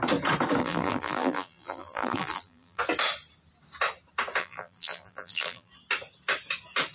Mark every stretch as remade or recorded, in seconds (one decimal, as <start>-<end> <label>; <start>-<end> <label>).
0.0-0.6 recorded; 0.6-2.8 remade; 2.8-4.4 recorded; 4.4-5.7 remade; 5.7-6.9 recorded